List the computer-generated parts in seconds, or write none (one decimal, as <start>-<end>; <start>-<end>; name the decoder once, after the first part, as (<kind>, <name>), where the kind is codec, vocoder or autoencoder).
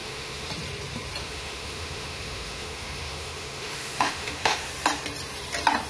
0.0-0.5 (autoencoder, DAC-VAE); 1.2-4.7